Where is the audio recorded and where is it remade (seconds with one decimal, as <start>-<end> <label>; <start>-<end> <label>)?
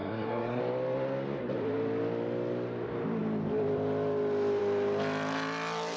0.0-0.6 remade; 0.6-6.0 recorded